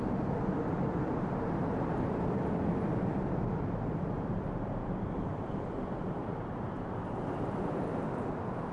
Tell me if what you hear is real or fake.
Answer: fake